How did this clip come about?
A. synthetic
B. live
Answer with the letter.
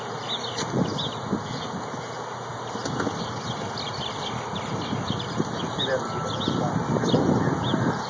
B